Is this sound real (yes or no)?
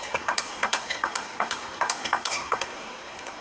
no